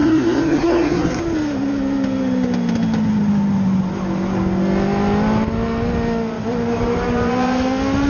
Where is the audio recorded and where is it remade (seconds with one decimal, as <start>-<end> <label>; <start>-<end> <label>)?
0.0-1.2 remade; 1.2-8.1 recorded